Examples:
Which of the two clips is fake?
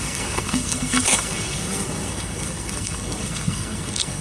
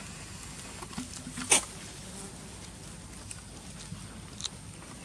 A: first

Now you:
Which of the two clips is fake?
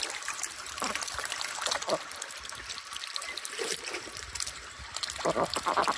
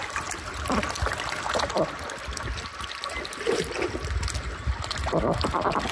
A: first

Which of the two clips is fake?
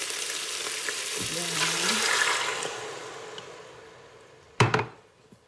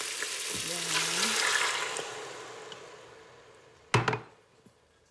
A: first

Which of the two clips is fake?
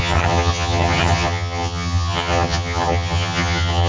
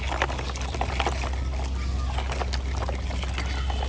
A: first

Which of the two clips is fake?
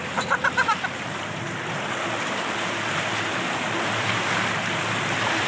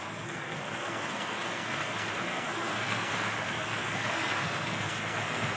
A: second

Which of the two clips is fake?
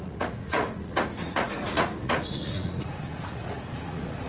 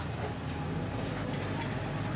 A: first